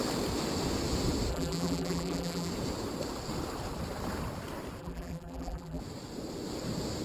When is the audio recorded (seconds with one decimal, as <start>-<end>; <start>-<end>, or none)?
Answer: 0.0-1.3; 2.5-4.8; 5.8-7.0